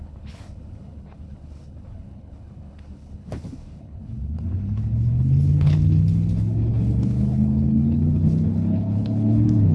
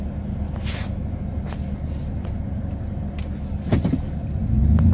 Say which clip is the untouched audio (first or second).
second